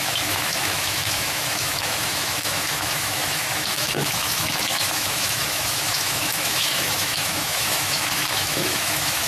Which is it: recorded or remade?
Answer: remade